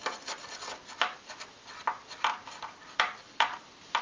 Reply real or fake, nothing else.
real